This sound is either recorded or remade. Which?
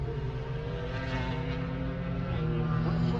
recorded